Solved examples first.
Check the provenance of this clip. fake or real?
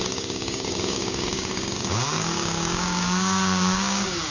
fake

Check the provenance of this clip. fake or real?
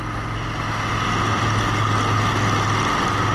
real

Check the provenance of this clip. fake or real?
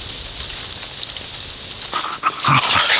real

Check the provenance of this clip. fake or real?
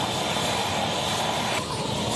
real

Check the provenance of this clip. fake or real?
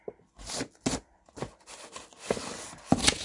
real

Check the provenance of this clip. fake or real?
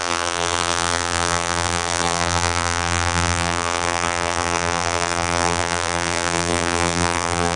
fake